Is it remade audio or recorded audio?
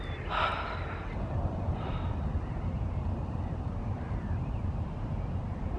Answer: remade